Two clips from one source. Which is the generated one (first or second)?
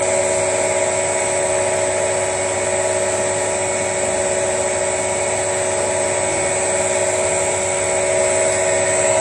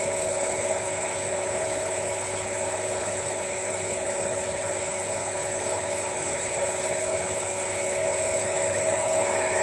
second